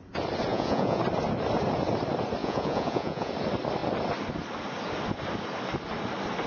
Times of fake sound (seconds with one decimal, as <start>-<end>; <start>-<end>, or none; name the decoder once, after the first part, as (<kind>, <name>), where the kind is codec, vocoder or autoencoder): 0.5-1.0 (vocoder, Vocos); 2.4-3.3